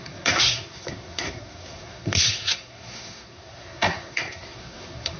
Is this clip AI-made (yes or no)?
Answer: yes